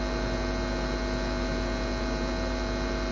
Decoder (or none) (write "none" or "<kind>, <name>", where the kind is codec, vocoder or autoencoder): none